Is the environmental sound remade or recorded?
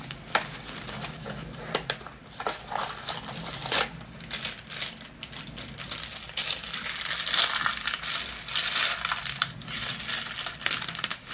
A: recorded